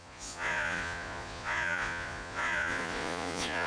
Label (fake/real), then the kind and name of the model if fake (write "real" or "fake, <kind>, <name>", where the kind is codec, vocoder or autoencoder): fake, vocoder, Vocos